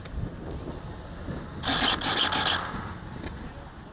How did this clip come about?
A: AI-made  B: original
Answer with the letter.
B